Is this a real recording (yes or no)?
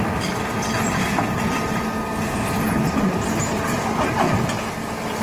yes